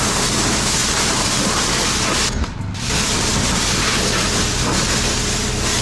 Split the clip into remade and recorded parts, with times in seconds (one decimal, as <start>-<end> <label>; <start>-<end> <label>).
0.0-5.8 recorded

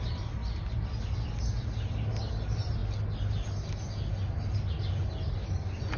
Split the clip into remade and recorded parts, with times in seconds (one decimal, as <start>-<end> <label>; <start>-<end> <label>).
0.0-6.0 recorded

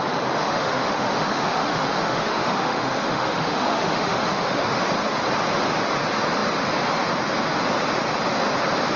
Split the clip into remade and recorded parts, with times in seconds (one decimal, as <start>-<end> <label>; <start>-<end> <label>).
0.0-0.4 recorded; 0.4-4.8 remade; 4.8-9.0 recorded

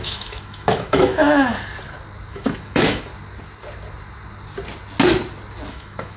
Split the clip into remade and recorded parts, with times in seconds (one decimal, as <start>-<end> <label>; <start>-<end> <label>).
0.0-1.5 remade; 1.5-2.3 recorded; 2.3-3.1 remade; 3.1-5.7 recorded; 5.7-6.2 remade

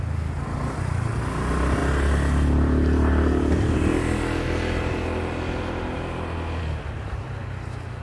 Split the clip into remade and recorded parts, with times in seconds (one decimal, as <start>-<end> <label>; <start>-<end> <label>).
0.0-8.0 recorded

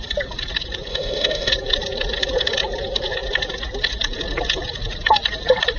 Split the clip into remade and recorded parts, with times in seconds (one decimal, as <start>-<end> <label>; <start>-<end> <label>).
0.0-0.9 recorded; 0.9-1.5 remade; 1.5-5.8 recorded